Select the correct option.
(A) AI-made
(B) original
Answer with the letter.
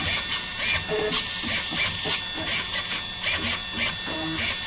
B